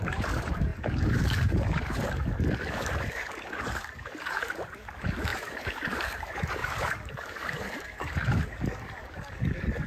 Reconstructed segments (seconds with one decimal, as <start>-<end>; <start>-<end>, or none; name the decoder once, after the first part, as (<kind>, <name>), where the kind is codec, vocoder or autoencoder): 0.0-9.9 (codec, DAC)